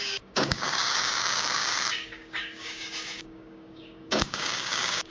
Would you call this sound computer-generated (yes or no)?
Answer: yes